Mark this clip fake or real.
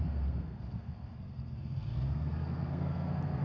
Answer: fake